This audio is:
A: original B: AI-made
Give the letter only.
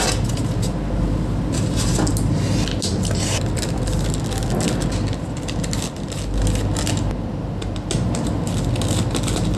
A